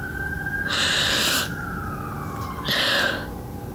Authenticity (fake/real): real